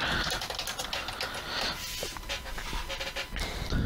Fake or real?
real